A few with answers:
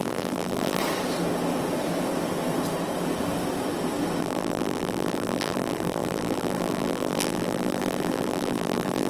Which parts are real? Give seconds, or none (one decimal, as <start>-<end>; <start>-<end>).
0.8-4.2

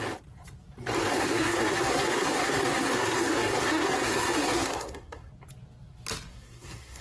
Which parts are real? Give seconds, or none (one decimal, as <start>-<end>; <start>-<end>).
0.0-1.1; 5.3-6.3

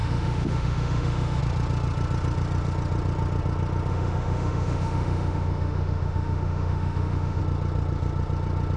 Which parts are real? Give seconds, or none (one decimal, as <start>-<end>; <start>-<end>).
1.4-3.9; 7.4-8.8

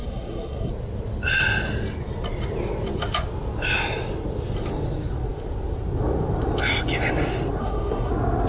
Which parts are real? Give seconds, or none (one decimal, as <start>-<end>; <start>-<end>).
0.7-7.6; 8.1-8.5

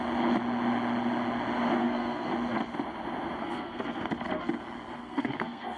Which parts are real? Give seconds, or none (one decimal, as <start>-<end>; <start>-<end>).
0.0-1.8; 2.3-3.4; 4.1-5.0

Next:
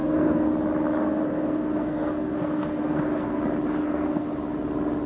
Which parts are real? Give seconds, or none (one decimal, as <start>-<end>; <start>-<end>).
0.5-1.0; 3.4-3.8; 4.3-5.1